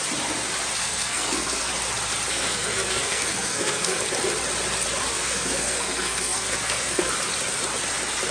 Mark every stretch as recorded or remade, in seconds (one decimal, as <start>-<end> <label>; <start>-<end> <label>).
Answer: 0.0-0.8 recorded; 0.8-1.7 remade; 1.7-2.3 recorded; 2.3-4.0 remade; 4.0-5.1 recorded; 5.1-7.1 remade; 7.1-8.3 recorded